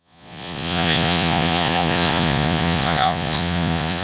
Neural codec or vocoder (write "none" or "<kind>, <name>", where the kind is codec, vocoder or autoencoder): vocoder, Vocos